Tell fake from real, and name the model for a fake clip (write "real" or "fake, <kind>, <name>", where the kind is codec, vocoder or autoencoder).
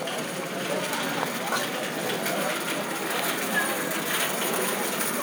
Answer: real